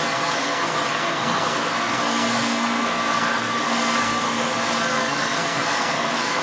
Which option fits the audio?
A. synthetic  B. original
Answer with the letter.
A